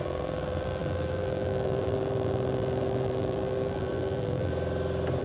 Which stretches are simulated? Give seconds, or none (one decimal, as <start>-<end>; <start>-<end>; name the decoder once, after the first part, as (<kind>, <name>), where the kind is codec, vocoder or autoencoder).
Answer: 0.0-4.5 (vocoder, BigVGAN v2)